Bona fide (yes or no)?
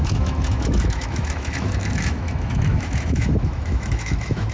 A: no